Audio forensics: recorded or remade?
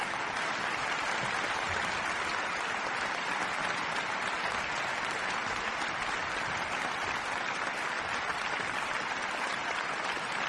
recorded